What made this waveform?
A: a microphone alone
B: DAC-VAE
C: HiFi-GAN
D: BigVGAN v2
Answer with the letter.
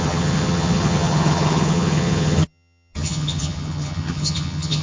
C